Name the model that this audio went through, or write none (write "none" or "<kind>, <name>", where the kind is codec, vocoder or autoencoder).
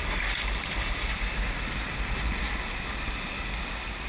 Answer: none